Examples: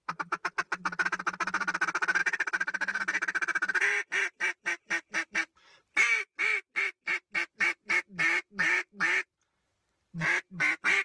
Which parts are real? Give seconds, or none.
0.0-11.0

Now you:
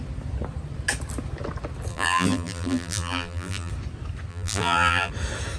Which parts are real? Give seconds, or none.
0.0-1.9; 3.7-4.3; 5.1-5.6